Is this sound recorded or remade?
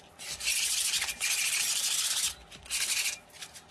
recorded